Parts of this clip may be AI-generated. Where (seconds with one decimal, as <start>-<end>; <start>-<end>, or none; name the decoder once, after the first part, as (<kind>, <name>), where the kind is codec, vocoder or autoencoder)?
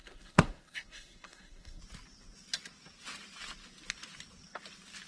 0.0-1.8 (codec, SNAC)